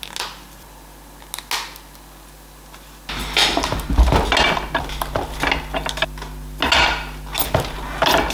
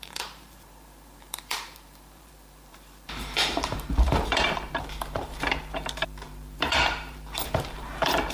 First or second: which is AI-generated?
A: second